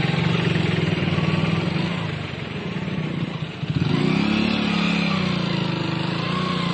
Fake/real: real